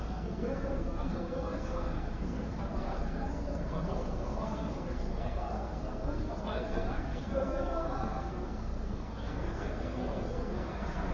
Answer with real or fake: fake